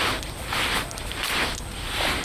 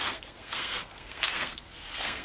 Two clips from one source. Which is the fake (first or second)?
second